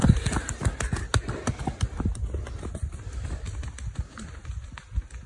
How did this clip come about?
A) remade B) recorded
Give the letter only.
B